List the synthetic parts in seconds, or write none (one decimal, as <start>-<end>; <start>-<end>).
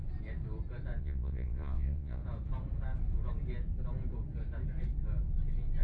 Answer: 1.0-2.2